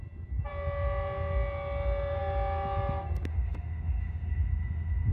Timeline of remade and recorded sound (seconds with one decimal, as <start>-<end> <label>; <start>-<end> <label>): 0.0-3.3 recorded; 3.3-5.1 remade